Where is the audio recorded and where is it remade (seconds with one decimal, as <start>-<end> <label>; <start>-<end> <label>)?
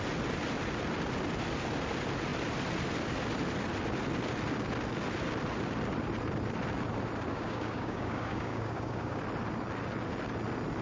0.0-7.3 recorded; 7.3-9.2 remade; 9.2-10.8 recorded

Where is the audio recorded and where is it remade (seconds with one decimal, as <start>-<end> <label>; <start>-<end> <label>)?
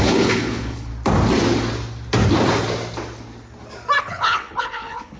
0.0-0.9 remade; 0.9-4.0 recorded; 4.0-5.2 remade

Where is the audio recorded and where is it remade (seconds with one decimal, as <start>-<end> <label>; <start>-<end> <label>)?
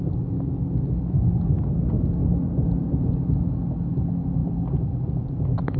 0.0-2.2 recorded; 2.2-3.3 remade; 3.3-5.8 recorded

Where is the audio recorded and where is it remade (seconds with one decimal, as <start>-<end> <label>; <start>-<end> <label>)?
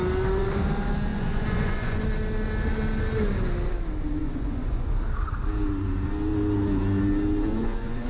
0.0-1.1 recorded; 1.1-2.0 remade; 2.0-4.2 recorded; 4.2-4.9 remade; 4.9-7.5 recorded; 7.5-8.1 remade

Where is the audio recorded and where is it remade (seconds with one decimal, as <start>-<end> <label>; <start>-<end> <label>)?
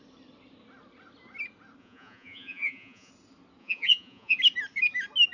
0.0-1.8 recorded; 1.8-3.1 remade; 3.1-3.6 recorded; 3.6-4.4 remade; 4.4-5.3 recorded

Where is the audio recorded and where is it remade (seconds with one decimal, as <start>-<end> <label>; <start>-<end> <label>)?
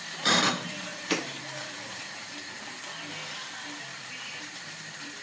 0.0-2.6 remade; 2.6-3.3 recorded; 3.3-5.2 remade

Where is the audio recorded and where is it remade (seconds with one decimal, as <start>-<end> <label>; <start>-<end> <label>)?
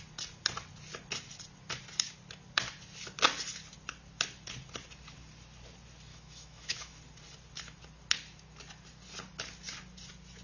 0.0-6.1 recorded; 6.1-7.0 remade; 7.0-10.4 recorded